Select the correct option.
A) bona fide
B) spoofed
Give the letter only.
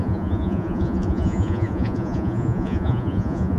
B